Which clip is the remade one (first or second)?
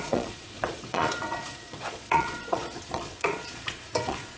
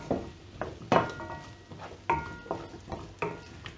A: first